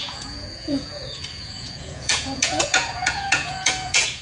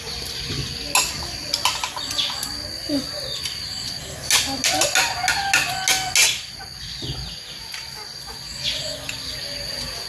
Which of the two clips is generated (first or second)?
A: first